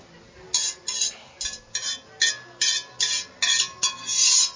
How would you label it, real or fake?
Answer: real